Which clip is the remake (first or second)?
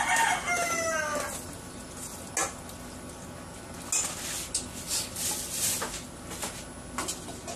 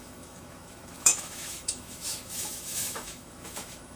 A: second